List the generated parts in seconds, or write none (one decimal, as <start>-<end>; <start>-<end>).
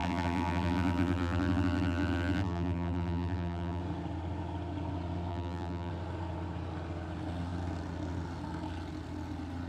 0.0-3.8; 5.3-5.9